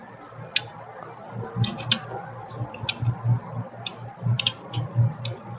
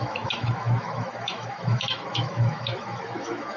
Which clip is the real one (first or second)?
first